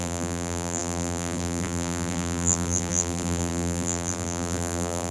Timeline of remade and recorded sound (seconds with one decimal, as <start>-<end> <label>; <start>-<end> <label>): 0.0-5.1 remade